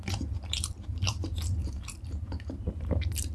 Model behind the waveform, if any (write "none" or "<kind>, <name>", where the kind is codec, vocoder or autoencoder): vocoder, BigVGAN v2